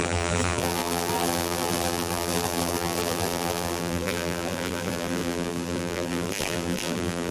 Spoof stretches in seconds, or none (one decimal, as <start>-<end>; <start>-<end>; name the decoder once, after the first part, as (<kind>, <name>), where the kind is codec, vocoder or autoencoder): 0.0-7.3 (vocoder, BigVGAN v2)